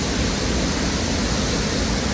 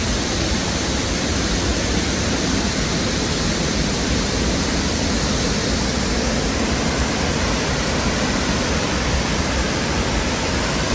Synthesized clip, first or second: second